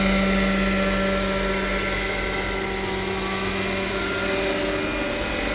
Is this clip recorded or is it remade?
recorded